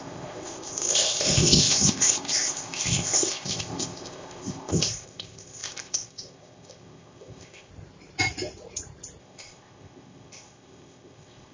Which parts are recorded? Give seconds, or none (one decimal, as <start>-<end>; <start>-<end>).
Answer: 7.7-9.2